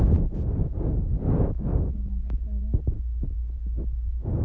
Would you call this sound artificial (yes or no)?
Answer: no